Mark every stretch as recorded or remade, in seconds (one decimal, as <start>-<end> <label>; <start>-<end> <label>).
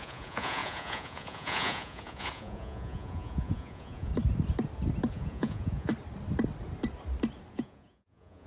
0.0-4.1 remade; 4.1-5.1 recorded; 5.1-5.9 remade; 5.9-7.5 recorded; 7.5-8.5 remade